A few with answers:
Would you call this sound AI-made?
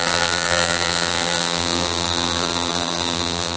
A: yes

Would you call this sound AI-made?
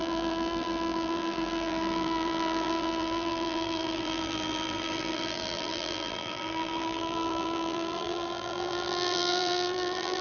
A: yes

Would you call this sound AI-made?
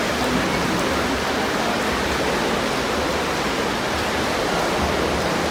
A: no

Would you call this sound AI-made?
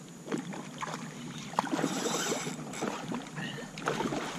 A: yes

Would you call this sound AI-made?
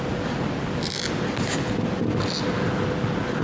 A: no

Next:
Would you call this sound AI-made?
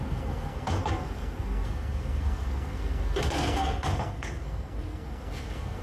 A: yes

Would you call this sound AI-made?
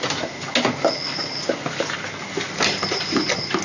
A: no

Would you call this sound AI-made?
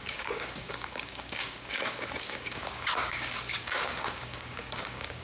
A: yes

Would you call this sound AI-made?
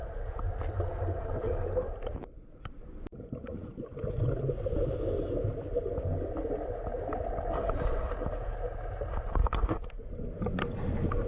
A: no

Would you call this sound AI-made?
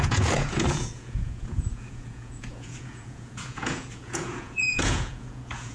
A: yes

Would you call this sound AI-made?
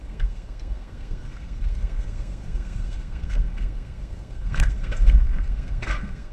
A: yes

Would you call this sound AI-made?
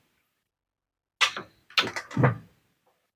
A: no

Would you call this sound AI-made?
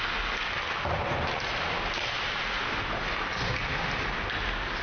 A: no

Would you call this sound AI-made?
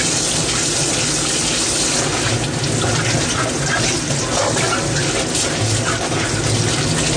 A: no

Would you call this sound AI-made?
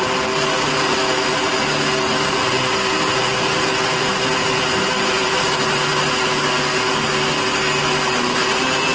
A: no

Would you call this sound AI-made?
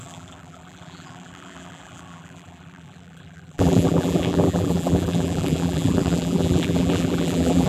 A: yes